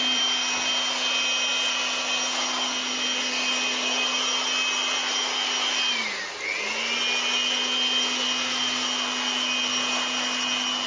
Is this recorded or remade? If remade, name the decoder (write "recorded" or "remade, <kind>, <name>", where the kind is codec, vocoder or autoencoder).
recorded